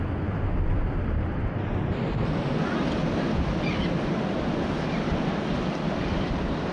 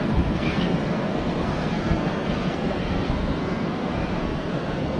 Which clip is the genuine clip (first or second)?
first